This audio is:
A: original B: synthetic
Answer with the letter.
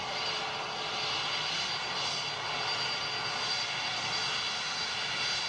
A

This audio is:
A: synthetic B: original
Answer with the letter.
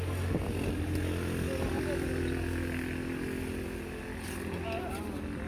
B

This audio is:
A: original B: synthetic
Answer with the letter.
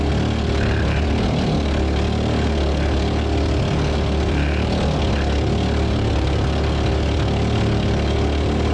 A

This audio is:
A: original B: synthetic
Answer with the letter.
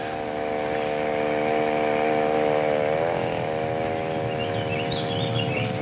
A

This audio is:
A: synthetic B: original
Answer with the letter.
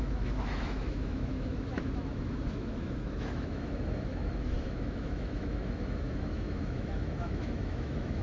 A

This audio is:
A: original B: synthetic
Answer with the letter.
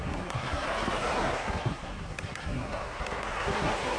B